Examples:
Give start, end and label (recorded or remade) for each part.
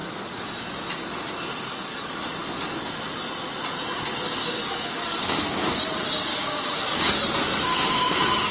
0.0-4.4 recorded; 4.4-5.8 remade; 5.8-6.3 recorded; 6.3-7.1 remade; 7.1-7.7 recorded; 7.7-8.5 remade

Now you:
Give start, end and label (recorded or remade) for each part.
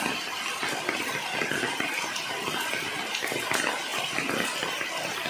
0.0-5.3 recorded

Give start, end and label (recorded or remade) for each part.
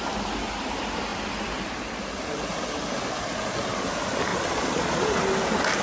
0.0-4.3 recorded; 4.3-5.2 remade; 5.2-5.8 recorded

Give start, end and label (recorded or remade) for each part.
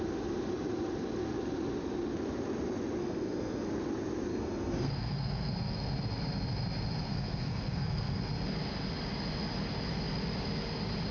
0.0-3.0 recorded; 3.0-3.7 remade; 3.7-4.3 recorded; 4.3-5.5 remade; 5.5-7.1 recorded; 7.1-8.2 remade; 8.2-11.1 recorded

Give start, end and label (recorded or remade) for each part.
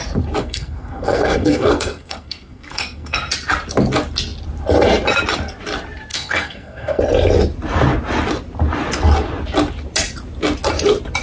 0.0-0.4 recorded; 0.4-3.3 remade; 3.3-6.1 recorded; 6.1-7.0 remade; 7.0-11.2 recorded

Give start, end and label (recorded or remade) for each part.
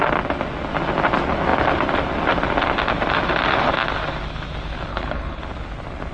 0.0-4.9 recorded; 4.9-5.4 remade; 5.4-6.1 recorded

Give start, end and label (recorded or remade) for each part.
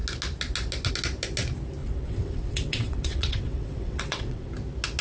0.0-1.8 recorded; 1.8-4.5 remade; 4.5-5.0 recorded